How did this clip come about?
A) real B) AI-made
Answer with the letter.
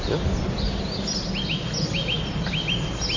A